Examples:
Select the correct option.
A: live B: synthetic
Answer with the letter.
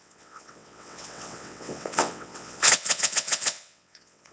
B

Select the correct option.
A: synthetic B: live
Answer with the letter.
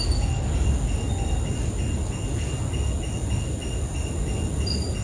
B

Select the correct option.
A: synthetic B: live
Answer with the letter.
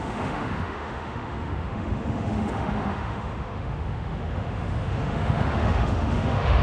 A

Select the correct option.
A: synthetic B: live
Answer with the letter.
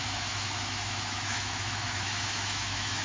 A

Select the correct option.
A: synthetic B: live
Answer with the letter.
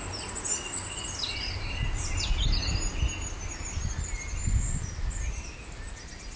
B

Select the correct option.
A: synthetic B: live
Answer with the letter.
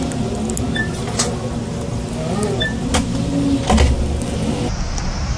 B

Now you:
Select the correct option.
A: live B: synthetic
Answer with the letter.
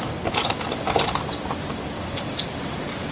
B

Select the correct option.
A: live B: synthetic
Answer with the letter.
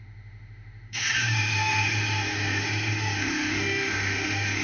B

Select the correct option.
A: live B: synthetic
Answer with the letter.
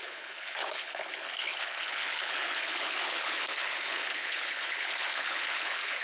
B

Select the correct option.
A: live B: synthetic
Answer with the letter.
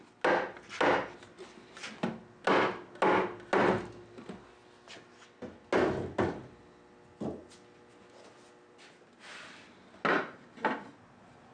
A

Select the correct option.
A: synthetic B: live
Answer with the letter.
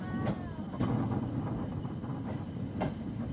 B